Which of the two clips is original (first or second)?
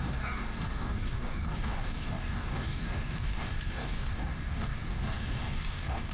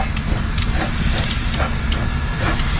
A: second